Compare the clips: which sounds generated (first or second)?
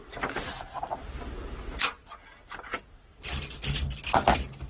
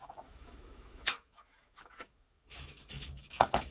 second